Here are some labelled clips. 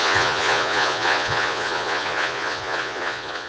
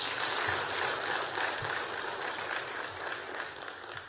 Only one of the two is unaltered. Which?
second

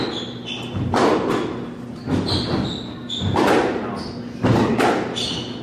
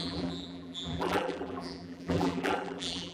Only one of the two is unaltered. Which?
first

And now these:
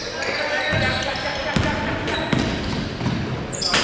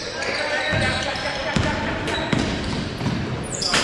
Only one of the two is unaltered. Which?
first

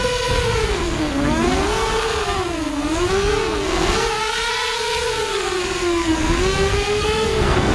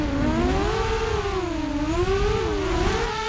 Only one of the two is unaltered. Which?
second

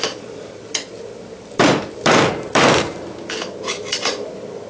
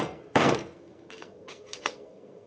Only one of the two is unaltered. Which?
first